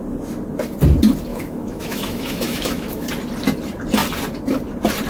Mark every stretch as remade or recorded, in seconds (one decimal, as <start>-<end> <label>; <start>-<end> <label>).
0.0-1.3 recorded; 1.3-3.1 remade; 3.1-5.1 recorded